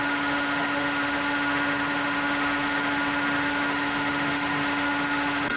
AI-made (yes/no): yes